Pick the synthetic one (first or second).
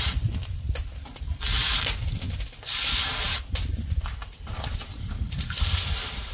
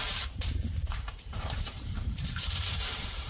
second